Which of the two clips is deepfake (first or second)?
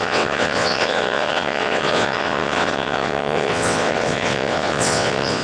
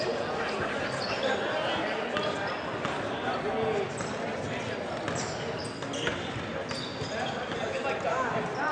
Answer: first